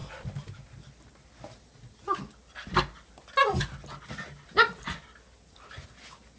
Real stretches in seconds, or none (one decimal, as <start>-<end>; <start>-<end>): 0.0-6.4